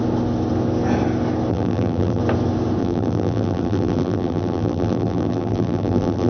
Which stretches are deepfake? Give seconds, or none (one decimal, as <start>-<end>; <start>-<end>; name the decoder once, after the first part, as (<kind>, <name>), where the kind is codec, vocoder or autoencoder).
1.5-2.2 (vocoder, BigVGAN v2); 2.8-6.3